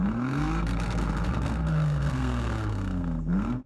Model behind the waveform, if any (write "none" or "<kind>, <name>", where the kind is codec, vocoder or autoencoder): codec, SNAC